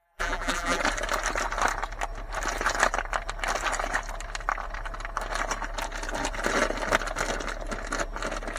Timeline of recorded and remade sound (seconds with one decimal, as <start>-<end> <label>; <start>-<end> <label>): 0.0-0.8 remade; 0.8-8.6 recorded